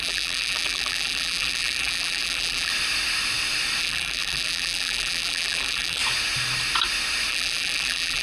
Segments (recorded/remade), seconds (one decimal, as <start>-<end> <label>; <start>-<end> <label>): 0.0-2.7 remade; 2.7-3.8 recorded; 3.8-6.0 remade; 6.0-7.3 recorded; 7.3-8.2 remade